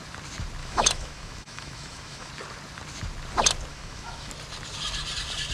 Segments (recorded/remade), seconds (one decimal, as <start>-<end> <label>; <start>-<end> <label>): 0.0-0.6 recorded; 0.6-2.3 remade; 2.3-3.7 recorded; 3.7-4.3 remade; 4.3-5.5 recorded